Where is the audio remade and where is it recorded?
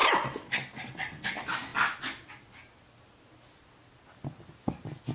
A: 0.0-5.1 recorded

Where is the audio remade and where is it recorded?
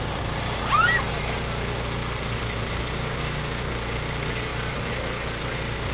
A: 0.0-5.9 recorded